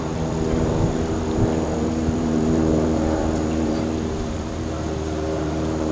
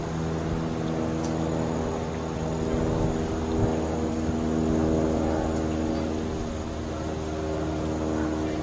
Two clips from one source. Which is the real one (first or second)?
second